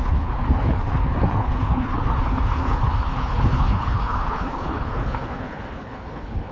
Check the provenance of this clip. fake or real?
fake